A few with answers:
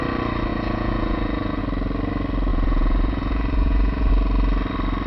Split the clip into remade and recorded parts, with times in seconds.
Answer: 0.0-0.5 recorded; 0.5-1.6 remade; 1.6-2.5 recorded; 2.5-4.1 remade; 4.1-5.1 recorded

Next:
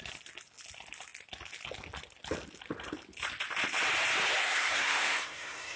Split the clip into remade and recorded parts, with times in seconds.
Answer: 0.0-4.4 recorded; 4.4-5.8 remade

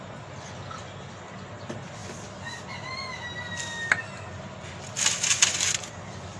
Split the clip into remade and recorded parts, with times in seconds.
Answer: 0.0-6.4 recorded